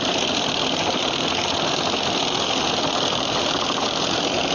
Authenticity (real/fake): real